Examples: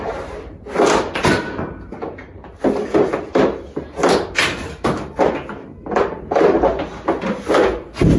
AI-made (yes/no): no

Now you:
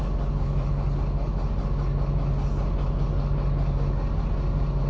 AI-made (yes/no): no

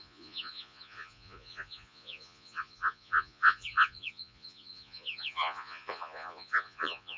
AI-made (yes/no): yes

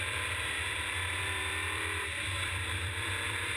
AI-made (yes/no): yes